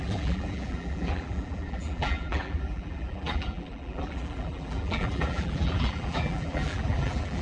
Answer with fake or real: fake